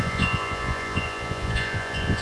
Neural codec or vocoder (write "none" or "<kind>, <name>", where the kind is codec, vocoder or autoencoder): vocoder, Vocos